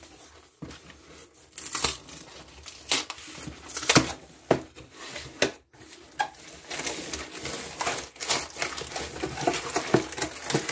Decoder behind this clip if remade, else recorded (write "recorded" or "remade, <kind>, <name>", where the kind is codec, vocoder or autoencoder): recorded